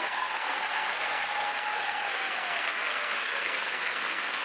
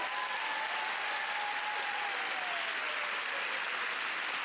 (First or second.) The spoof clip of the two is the first